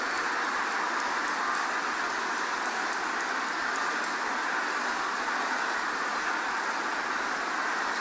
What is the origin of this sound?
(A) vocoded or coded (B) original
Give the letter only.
B